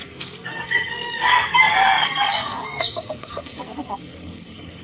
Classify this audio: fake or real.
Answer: fake